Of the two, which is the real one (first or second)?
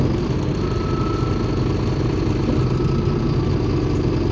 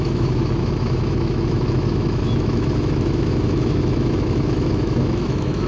first